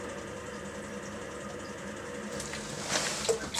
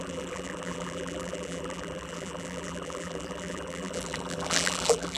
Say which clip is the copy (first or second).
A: second